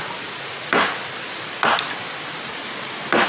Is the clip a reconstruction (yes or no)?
no